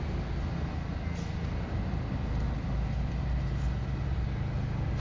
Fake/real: real